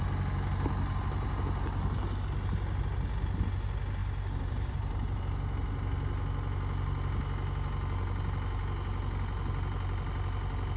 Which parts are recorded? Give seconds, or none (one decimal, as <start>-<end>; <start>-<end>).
0.0-4.0; 5.2-10.8